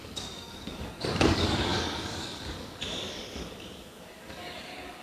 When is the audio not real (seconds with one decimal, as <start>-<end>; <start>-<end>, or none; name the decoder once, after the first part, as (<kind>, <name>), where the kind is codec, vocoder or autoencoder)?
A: 0.0-5.0 (codec, DAC)